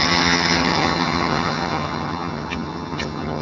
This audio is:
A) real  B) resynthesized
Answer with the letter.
B